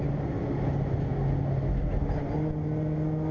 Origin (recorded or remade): recorded